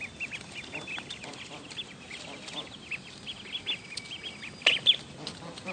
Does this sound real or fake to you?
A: real